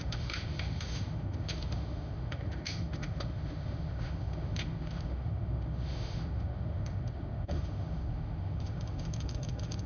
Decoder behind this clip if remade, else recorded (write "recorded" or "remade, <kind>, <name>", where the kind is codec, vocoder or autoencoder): remade, autoencoder, DAC-VAE